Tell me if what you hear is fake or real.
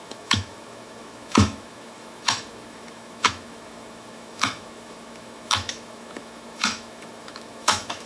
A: fake